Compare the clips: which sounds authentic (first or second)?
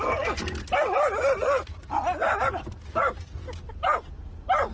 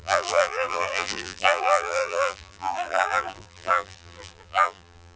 first